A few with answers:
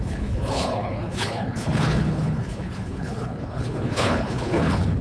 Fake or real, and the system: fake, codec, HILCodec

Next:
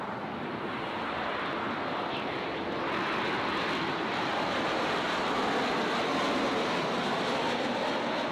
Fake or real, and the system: real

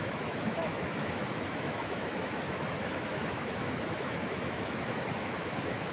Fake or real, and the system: fake, autoencoder, DAC-VAE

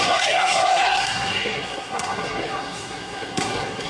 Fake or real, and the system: fake, codec, SNAC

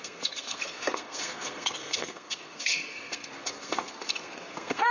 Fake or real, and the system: fake, codec, SNAC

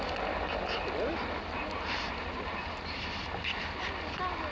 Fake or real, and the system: fake, vocoder, BigVGAN v2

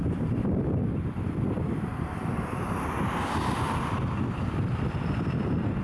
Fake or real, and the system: fake, vocoder, BigVGAN v2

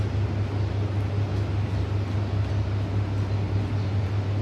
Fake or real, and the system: real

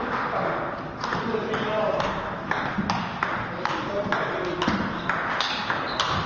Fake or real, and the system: real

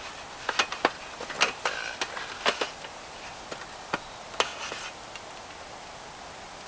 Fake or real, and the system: real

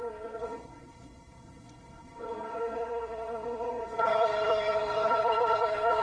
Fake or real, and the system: fake, codec, SNAC